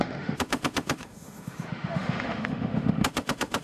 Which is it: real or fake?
fake